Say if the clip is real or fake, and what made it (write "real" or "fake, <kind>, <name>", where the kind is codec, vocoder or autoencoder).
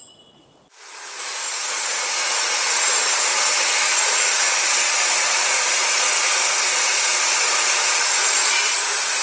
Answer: fake, vocoder, Vocos